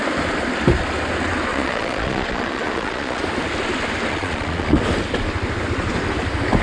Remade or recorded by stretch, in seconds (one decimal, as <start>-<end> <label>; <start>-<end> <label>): 0.0-1.5 recorded; 1.5-3.2 remade; 3.2-4.1 recorded; 4.1-4.8 remade; 4.8-6.6 recorded